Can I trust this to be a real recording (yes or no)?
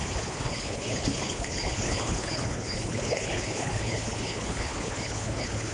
no